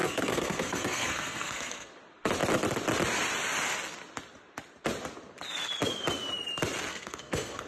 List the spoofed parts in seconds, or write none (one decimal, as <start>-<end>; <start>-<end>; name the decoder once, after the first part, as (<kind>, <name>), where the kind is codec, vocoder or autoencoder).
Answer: 0.0-1.9 (codec, SNAC); 6.9-7.7